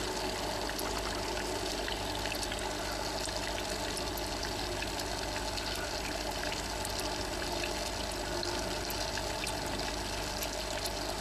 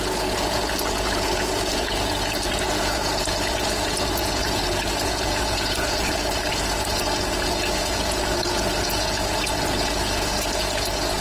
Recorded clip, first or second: first